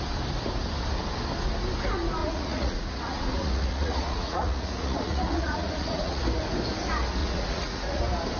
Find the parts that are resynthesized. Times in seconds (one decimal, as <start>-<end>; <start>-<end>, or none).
2.2-6.2; 7.2-8.0